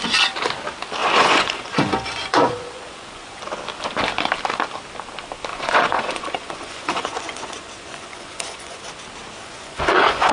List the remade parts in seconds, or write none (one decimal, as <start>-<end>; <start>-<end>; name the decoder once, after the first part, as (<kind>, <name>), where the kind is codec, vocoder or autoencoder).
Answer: 1.0-3.4 (vocoder, Vocos); 5.5-8.8; 9.4-10.3